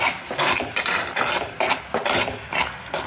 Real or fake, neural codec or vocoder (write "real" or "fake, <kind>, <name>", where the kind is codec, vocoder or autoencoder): fake, vocoder, BigVGAN v2